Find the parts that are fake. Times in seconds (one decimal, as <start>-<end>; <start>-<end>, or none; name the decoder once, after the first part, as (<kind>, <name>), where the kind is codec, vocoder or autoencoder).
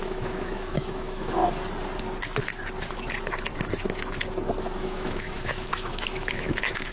0.0-1.4 (autoencoder, DAC-VAE); 4.8-6.9